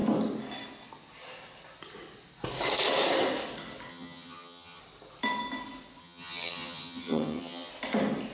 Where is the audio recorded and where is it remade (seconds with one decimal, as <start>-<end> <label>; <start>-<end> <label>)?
0.0-3.9 recorded; 3.9-4.8 remade; 4.8-6.0 recorded; 6.0-7.7 remade; 7.7-8.3 recorded